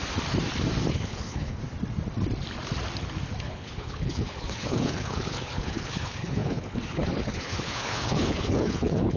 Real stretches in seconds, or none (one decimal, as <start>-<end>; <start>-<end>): 0.0-0.9; 1.6-3.4